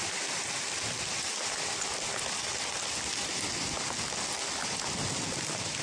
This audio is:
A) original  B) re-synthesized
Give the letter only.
A